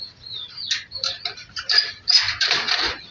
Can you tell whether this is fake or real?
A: real